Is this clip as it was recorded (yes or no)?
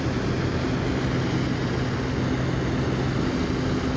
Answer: yes